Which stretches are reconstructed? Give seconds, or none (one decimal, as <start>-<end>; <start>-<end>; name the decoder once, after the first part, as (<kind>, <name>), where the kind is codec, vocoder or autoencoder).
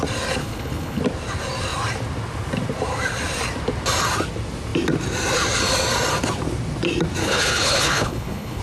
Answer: 0.4-1.0 (codec, HILCodec); 7.2-8.6